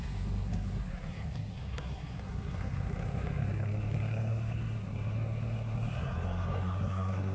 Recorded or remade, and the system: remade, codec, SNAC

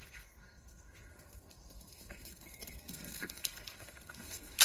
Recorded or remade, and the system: remade, codec, SNAC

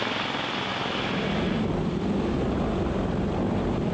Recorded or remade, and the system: recorded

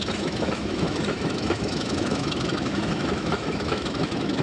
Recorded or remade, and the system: remade, autoencoder, DAC-VAE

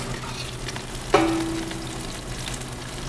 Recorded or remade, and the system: recorded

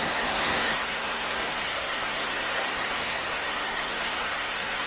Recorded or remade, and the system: remade, codec, SNAC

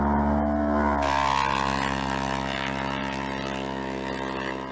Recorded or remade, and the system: recorded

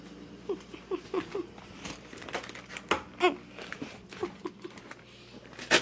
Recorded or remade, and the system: recorded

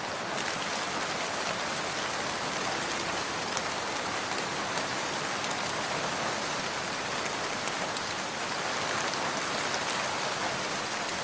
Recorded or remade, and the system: recorded